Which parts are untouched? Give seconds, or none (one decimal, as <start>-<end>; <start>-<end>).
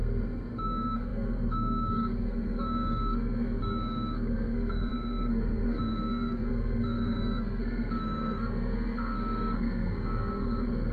none